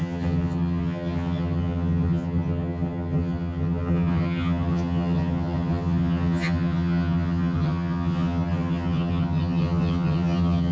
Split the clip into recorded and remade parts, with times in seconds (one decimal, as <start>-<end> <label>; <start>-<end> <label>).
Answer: 0.0-10.7 remade